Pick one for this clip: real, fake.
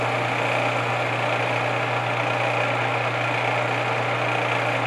real